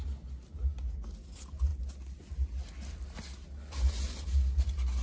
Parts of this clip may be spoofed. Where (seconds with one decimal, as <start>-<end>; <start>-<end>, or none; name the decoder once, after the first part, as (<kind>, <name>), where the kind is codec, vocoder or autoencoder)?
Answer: none